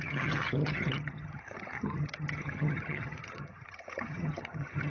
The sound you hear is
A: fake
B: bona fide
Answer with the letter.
A